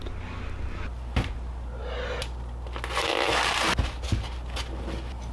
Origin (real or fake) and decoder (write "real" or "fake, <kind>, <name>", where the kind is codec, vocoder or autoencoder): real